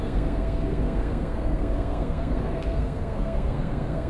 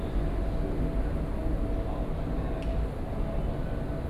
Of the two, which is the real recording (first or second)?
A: second